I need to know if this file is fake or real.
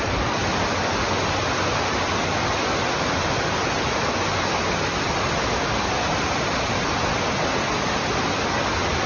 real